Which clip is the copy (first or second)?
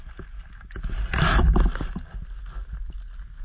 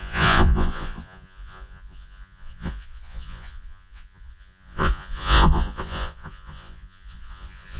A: second